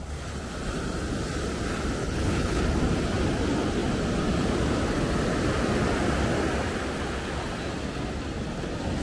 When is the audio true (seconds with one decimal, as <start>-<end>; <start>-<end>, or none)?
0.0-2.0; 2.6-9.0